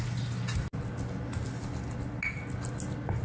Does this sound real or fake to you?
real